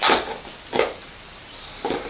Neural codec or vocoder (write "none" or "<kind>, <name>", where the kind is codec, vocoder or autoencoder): none